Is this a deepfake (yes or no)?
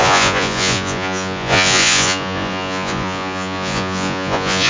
yes